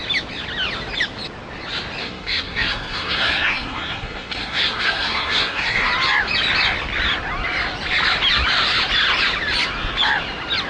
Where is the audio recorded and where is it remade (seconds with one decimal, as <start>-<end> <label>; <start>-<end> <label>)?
0.0-2.0 recorded; 2.0-5.9 remade; 5.9-10.7 recorded